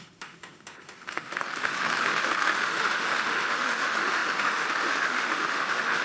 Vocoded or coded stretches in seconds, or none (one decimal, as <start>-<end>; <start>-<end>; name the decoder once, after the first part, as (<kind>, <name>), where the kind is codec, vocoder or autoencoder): 0.0-6.0 (autoencoder, DAC-VAE)